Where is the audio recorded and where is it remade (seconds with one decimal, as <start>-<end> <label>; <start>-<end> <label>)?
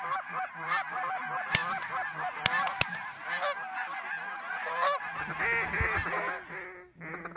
0.0-7.4 recorded